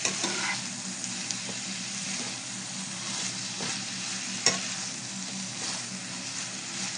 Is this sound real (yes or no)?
yes